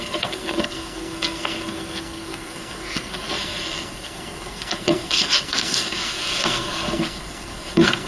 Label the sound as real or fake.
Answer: fake